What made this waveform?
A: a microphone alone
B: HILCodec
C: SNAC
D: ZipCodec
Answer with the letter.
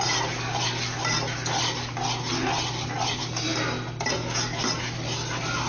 A